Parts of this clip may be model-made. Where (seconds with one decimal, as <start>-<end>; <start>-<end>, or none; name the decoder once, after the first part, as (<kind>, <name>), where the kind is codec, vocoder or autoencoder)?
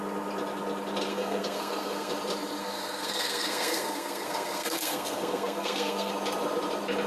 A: 1.1-2.1 (codec, SNAC); 2.6-6.1